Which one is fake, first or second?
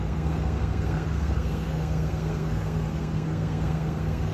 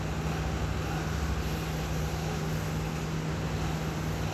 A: first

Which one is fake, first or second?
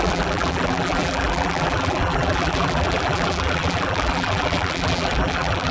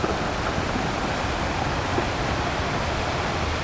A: first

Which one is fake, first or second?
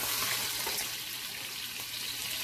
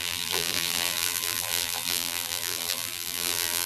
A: second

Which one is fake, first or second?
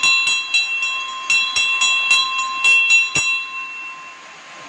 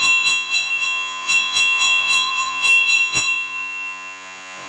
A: second